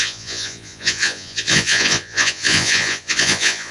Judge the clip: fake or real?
fake